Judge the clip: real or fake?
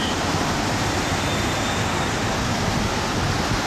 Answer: real